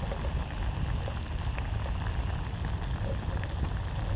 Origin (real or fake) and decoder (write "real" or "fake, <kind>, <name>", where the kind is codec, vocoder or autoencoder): real